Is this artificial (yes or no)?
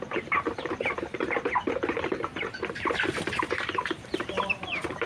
yes